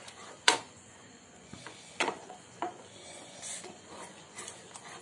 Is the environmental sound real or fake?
fake